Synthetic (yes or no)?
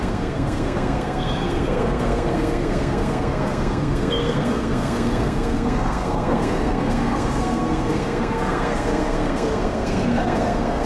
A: yes